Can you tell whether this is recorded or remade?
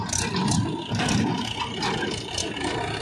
recorded